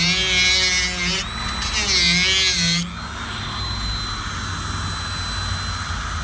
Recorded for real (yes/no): yes